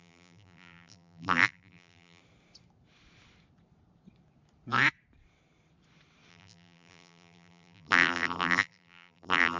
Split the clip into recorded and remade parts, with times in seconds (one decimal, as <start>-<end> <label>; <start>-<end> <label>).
0.0-2.2 remade; 2.2-6.3 recorded; 6.3-9.6 remade